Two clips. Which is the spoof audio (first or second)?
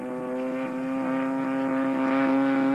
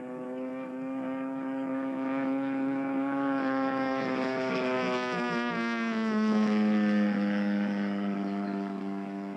second